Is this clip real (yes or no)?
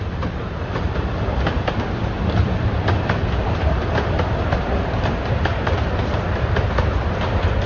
no